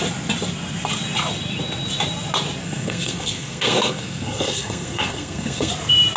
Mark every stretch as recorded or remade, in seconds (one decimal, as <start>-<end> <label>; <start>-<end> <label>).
0.0-2.6 recorded; 2.6-5.7 remade; 5.7-6.2 recorded

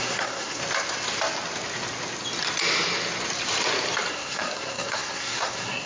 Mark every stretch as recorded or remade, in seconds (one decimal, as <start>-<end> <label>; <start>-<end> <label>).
0.0-0.6 remade; 0.6-4.1 recorded; 4.1-5.9 remade

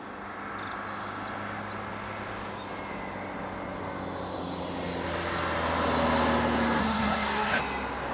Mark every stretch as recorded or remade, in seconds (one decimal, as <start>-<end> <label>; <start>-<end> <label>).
0.0-6.8 recorded; 6.8-7.6 remade; 7.6-8.1 recorded

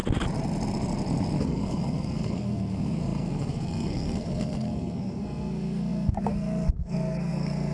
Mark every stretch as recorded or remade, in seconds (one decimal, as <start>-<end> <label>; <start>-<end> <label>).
0.0-1.4 recorded; 1.4-7.7 remade

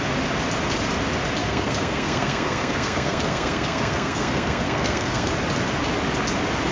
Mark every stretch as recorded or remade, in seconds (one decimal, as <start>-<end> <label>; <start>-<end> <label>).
0.0-1.4 recorded; 1.4-5.3 remade; 5.3-6.7 recorded

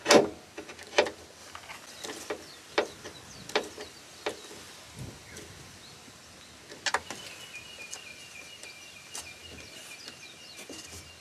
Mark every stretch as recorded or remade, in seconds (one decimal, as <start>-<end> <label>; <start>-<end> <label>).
0.0-11.2 recorded

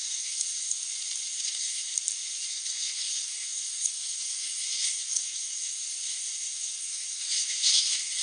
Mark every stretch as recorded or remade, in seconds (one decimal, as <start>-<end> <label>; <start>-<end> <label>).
0.0-0.8 remade; 0.8-1.3 recorded; 1.3-1.9 remade; 1.9-2.5 recorded; 2.5-8.2 remade